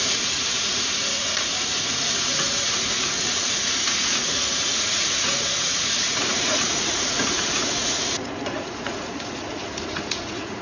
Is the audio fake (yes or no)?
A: yes